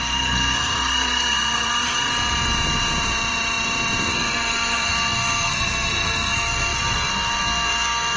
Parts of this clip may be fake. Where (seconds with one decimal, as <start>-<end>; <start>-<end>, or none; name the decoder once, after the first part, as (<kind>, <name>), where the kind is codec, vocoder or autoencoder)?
0.0-2.1 (codec, SNAC); 4.1-8.2